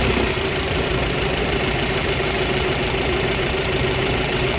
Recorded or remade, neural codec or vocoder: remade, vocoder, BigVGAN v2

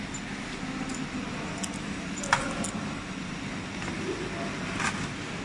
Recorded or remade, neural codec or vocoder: recorded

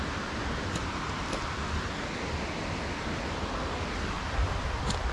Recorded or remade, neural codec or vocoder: recorded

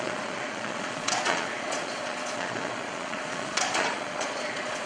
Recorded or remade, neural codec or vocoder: remade, vocoder, Vocos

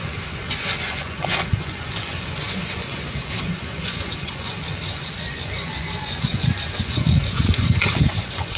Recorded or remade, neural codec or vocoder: remade, vocoder, Vocos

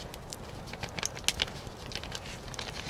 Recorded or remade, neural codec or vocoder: recorded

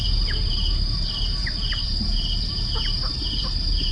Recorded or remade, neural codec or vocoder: remade, vocoder, BigVGAN v2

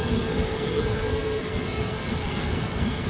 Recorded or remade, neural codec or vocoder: remade, codec, SNAC